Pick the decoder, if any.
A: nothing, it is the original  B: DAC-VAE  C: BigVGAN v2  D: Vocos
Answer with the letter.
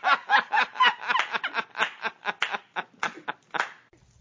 A